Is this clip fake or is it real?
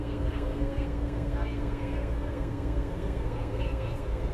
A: fake